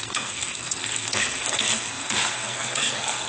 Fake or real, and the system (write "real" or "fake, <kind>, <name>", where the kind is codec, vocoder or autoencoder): fake, codec, SNAC